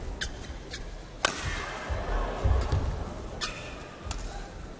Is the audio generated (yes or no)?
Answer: no